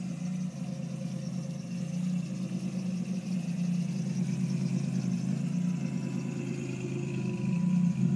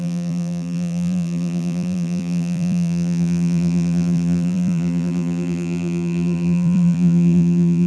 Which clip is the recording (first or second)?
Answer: first